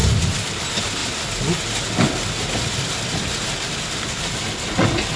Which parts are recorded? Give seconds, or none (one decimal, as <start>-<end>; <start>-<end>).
0.0-5.2